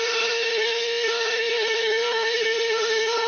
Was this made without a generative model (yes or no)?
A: no